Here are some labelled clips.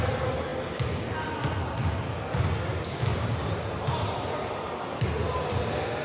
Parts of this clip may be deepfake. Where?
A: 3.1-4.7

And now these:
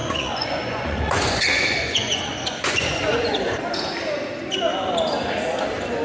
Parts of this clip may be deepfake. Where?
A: 0.0-3.6

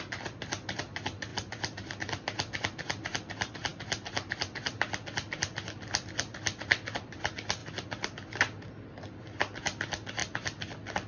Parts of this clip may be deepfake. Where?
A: none

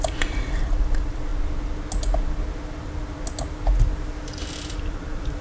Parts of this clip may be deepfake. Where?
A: 0.0-1.3; 4.5-5.4

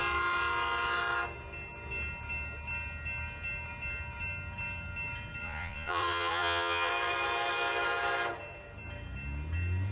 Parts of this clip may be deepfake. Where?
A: 5.4-6.9

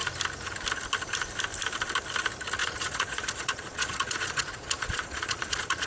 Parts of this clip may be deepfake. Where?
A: 2.6-5.9

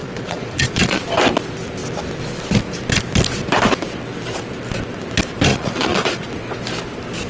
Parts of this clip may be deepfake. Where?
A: 0.0-1.0; 5.5-6.3